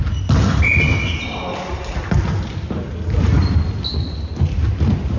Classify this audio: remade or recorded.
recorded